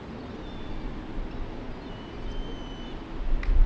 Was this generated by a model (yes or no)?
no